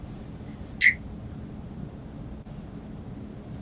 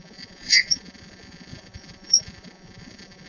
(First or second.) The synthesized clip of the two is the second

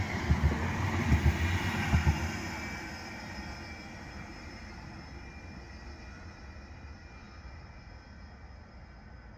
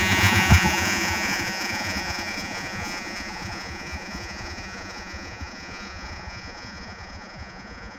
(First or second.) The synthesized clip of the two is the second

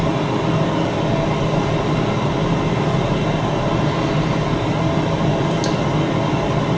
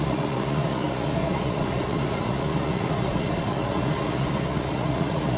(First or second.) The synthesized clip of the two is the second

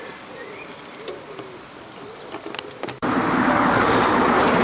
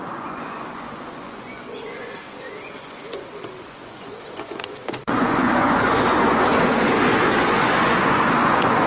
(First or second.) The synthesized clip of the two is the second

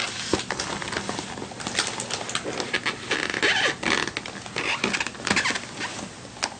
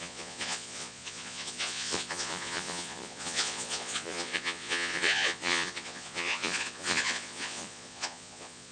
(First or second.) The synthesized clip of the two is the second